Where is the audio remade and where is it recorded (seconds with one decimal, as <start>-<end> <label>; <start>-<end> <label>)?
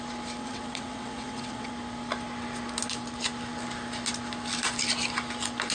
0.0-0.4 recorded; 0.4-1.7 remade; 1.7-5.7 recorded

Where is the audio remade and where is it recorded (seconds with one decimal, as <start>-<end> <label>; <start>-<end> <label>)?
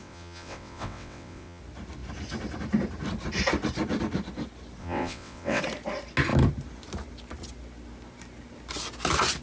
0.0-1.6 remade; 1.6-4.8 recorded; 4.8-5.6 remade; 5.6-9.4 recorded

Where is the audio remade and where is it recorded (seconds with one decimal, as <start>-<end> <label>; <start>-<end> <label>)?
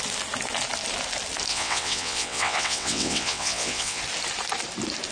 0.0-1.5 recorded; 1.5-4.0 remade; 4.0-5.1 recorded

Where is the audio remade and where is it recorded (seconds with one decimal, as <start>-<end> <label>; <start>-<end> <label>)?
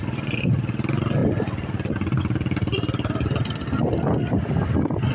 0.0-5.1 recorded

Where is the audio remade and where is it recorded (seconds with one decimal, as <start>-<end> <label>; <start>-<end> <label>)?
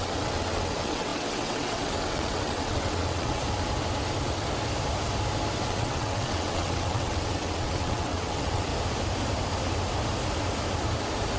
0.0-3.4 remade; 3.4-5.7 recorded; 5.7-8.7 remade; 8.7-11.4 recorded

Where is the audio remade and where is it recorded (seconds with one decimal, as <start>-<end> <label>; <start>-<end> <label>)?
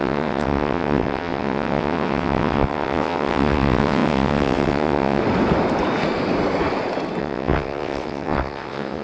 0.0-5.2 remade; 5.2-7.2 recorded; 7.2-9.0 remade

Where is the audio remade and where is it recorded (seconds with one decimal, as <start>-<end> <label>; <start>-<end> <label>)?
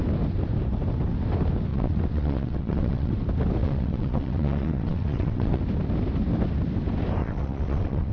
0.0-1.7 recorded; 1.7-3.1 remade; 3.1-3.6 recorded; 3.6-5.6 remade; 5.6-7.2 recorded; 7.2-8.1 remade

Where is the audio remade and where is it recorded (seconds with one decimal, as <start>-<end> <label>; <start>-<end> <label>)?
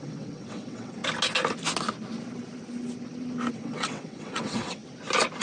0.0-1.0 remade; 1.0-3.5 recorded; 3.5-4.8 remade; 4.8-5.4 recorded